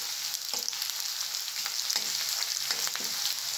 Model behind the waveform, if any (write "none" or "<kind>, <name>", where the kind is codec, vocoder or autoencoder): none